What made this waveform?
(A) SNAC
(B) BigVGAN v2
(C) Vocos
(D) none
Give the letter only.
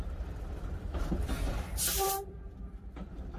B